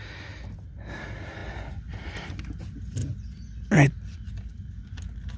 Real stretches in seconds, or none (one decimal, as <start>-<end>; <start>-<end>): 0.0-5.4